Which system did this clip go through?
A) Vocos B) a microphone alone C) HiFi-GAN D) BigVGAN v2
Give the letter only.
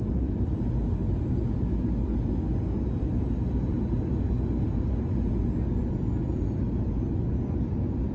B